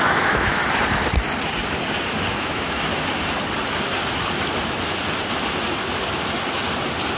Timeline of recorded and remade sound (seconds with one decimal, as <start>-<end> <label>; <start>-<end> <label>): 0.0-0.6 remade; 0.6-2.4 recorded; 2.4-2.9 remade; 2.9-7.2 recorded